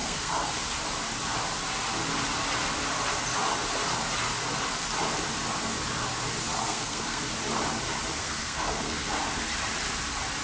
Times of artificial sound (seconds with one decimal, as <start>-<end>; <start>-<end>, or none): 0.0-0.5; 6.6-7.2; 8.2-9.2